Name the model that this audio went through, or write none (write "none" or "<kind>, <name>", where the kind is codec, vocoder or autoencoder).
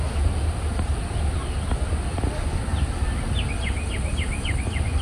none